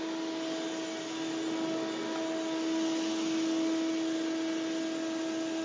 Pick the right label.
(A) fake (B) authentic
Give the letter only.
B